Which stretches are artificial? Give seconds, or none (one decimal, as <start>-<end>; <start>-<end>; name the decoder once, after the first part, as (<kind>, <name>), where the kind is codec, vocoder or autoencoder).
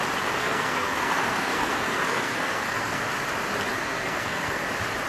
0.4-3.0 (codec, SNAC); 3.7-4.6